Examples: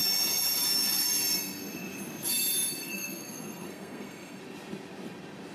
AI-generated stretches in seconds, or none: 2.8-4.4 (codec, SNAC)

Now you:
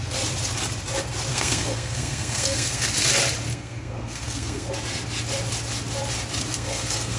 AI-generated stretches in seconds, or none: 1.3-2.9 (codec, SNAC); 3.5-4.7; 6.5-7.2